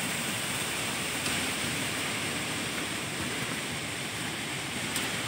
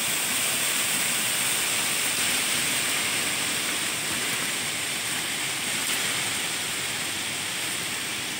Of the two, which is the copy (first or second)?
first